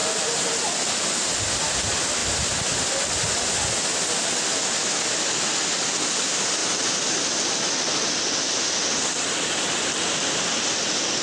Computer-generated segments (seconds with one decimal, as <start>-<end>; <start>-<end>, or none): none